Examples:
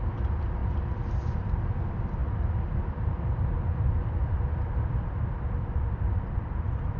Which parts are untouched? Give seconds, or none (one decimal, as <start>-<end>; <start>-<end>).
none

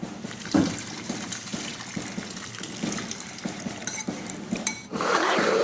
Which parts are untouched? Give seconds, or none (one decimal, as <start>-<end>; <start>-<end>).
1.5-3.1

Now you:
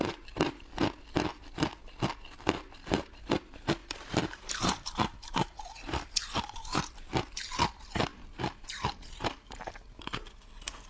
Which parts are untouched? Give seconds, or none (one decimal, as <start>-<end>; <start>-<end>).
0.0-3.8; 7.3-10.9